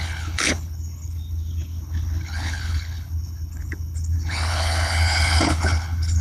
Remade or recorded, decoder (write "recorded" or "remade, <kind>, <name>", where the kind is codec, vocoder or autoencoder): remade, codec, HILCodec